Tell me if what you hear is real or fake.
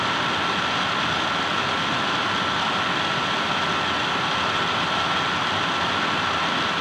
real